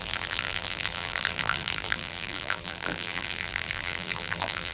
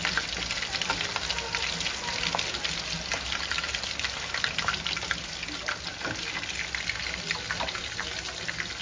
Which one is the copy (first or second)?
first